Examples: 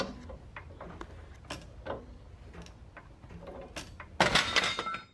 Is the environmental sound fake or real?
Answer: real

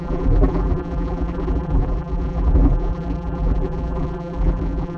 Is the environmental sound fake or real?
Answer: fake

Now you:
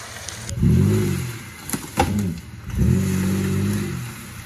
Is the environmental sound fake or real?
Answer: real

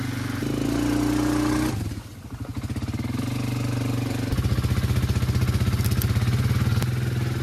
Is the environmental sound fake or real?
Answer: real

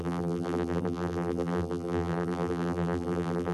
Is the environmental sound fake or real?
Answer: fake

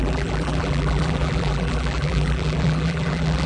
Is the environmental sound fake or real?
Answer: fake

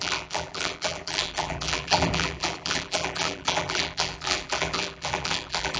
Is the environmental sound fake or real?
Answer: fake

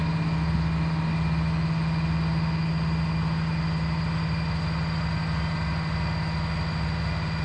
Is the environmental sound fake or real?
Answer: real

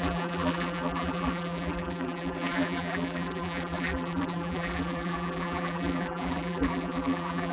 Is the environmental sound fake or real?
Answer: fake